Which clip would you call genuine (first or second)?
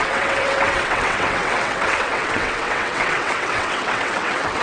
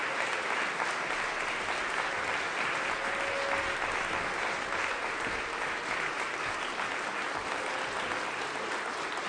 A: second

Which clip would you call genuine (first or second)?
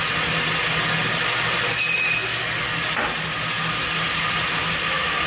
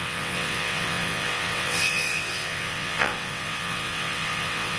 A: first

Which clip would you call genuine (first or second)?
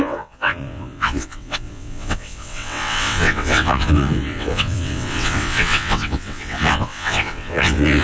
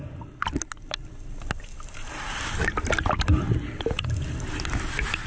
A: second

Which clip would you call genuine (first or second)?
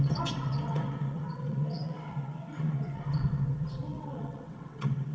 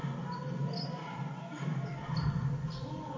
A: second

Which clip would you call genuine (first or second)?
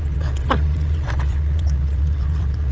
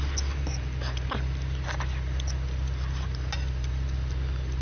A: second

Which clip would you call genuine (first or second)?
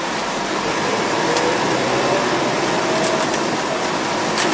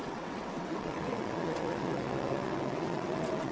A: first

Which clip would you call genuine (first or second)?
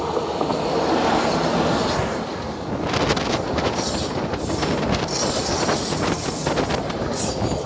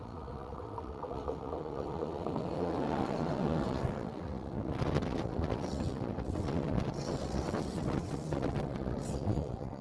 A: first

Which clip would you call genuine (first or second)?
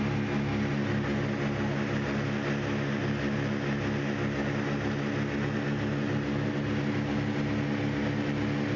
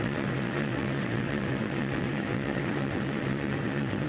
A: first